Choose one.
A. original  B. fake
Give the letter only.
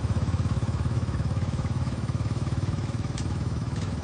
B